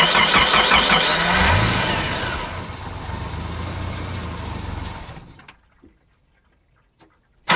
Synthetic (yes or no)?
no